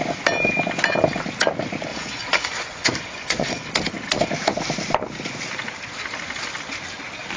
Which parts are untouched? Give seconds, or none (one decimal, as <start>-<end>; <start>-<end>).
0.0-1.9; 3.7-7.4